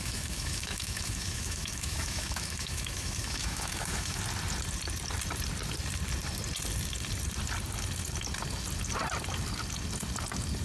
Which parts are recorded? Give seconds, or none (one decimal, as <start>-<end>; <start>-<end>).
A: 4.2-10.6